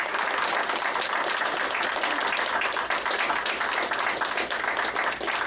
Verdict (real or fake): real